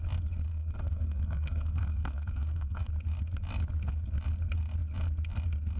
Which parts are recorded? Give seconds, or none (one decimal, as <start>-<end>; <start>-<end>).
0.0-0.5; 2.9-5.8